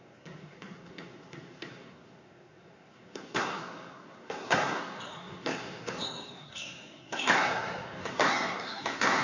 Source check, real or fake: fake